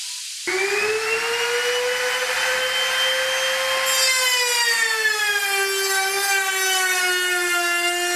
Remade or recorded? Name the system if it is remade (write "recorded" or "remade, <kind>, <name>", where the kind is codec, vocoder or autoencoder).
recorded